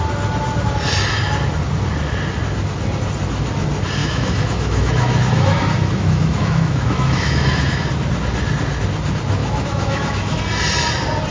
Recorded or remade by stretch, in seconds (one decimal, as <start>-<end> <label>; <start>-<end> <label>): 0.0-4.0 recorded; 4.0-7.9 remade; 7.9-9.4 recorded; 9.4-10.4 remade; 10.4-11.3 recorded